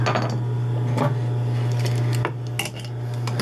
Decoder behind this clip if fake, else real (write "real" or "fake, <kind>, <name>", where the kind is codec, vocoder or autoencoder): real